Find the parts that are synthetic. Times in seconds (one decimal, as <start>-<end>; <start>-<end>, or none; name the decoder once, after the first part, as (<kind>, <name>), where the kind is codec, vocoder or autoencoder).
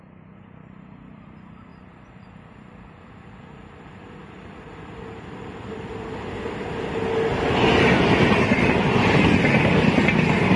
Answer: 1.7-6.3 (vocoder, BigVGAN v2)